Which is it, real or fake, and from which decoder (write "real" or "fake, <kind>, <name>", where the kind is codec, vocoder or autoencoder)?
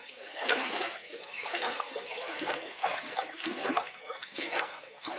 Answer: fake, codec, SNAC